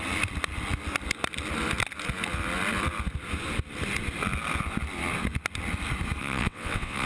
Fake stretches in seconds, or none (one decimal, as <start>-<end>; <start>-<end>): 6.2-7.1